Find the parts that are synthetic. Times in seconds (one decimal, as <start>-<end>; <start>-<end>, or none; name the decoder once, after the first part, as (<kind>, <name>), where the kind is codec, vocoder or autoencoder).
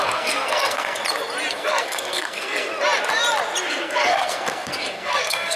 0.0-1.0 (codec, SNAC); 1.5-2.7; 3.7-5.6